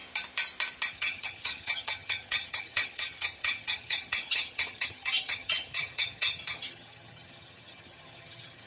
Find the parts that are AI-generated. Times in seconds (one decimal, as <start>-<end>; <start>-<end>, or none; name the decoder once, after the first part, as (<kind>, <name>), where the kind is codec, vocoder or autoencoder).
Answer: 0.9-8.7 (vocoder, HiFi-GAN)